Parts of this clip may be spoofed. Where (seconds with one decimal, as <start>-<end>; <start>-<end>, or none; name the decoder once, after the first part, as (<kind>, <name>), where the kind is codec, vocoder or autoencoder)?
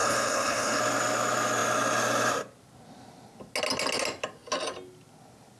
0.0-0.8 (codec, HILCodec)